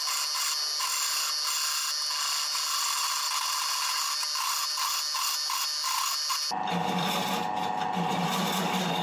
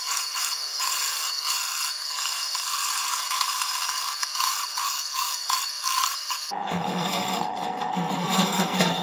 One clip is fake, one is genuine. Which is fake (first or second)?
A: second